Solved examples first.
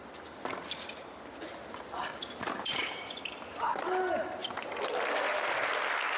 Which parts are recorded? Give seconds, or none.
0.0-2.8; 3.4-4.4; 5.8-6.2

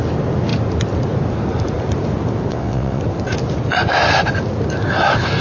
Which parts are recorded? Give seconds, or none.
0.0-2.5; 3.0-5.4

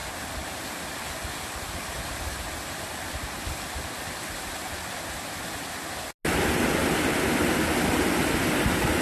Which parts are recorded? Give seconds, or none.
0.0-9.0

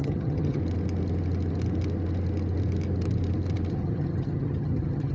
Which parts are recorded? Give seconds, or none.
0.6-3.7